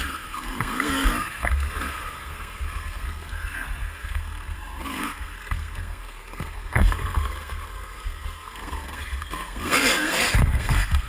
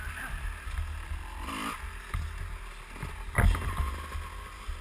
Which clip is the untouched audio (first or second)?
second